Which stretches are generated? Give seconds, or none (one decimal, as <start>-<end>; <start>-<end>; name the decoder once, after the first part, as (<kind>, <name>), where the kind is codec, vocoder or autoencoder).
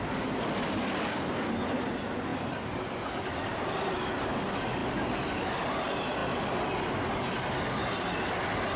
none